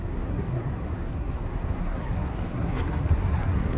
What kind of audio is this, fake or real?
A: fake